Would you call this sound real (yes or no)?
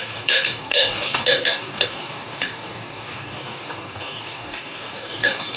no